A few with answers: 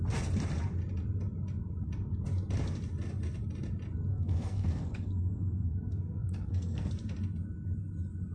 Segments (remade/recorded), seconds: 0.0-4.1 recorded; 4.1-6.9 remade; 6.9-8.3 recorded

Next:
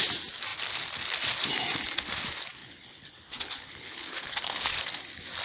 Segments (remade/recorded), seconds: 0.0-2.6 recorded; 2.6-4.8 remade; 4.8-5.4 recorded